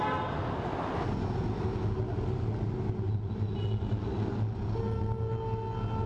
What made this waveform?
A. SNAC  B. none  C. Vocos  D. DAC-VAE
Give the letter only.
B